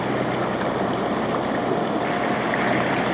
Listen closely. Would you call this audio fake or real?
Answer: real